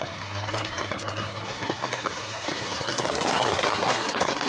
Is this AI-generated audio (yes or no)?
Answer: yes